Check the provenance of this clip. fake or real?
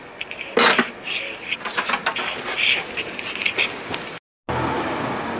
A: real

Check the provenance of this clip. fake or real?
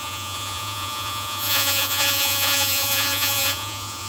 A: fake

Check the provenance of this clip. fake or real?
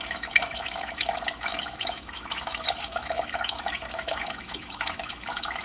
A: fake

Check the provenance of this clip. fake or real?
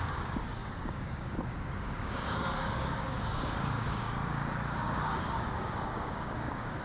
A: fake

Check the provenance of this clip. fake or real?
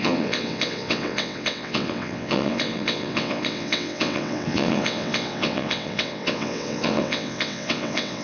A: fake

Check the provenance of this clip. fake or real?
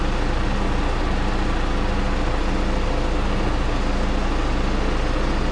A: real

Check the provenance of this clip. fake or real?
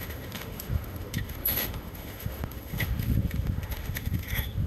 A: fake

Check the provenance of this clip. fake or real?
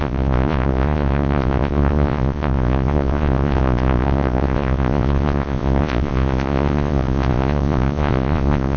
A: fake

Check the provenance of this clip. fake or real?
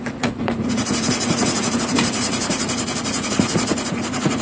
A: fake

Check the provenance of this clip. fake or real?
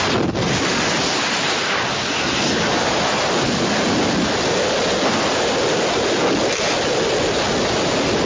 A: real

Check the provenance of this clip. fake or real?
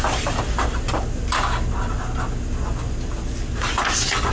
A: real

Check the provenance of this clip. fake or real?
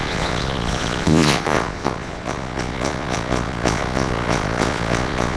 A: fake